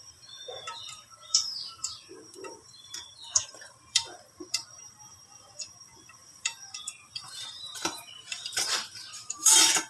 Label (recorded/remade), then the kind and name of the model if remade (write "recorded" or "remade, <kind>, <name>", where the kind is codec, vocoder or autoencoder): remade, vocoder, BigVGAN v2